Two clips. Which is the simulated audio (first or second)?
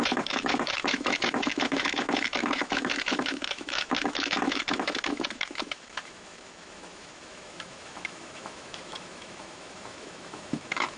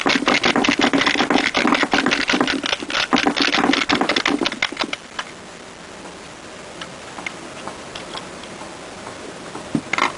first